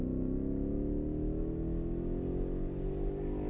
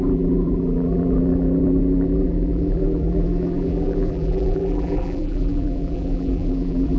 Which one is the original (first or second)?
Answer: first